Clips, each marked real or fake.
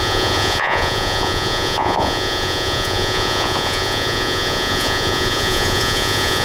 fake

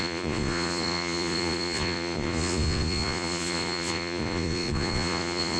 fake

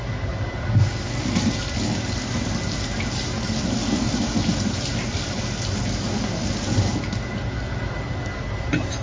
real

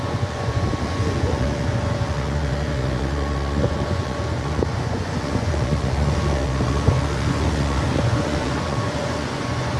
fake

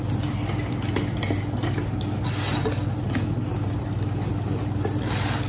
real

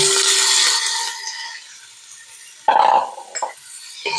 real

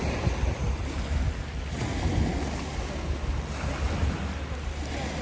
real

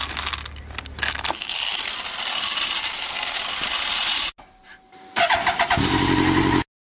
real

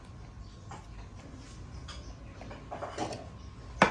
real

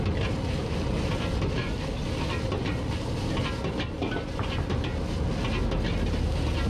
real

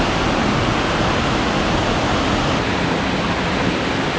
real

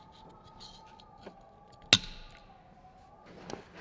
real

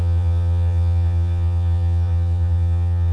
fake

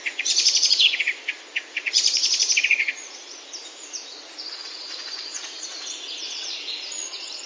fake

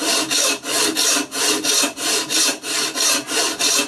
real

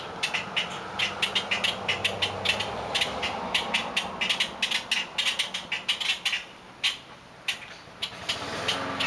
real